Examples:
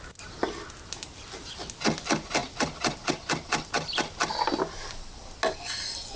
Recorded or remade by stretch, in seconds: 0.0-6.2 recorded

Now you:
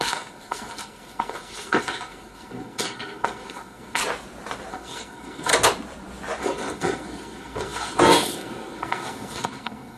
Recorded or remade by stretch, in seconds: 0.0-4.0 remade; 4.0-4.7 recorded; 4.7-5.5 remade; 5.5-6.4 recorded; 6.4-10.0 remade